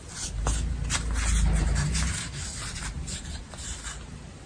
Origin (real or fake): real